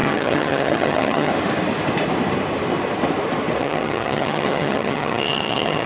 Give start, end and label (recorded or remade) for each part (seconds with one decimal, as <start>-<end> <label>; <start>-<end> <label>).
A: 0.0-1.3 remade; 1.3-3.6 recorded; 3.6-5.9 remade